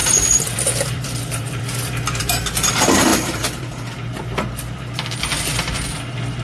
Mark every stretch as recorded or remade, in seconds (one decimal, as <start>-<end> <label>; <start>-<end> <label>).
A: 0.0-2.7 remade; 2.7-3.1 recorded; 3.1-5.4 remade; 5.4-6.4 recorded